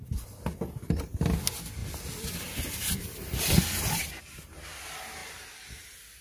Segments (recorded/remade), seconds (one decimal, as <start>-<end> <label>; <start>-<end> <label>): 0.0-6.2 recorded